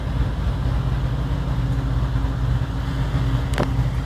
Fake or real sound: real